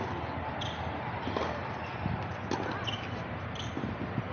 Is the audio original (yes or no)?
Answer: yes